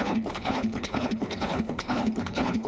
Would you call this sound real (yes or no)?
no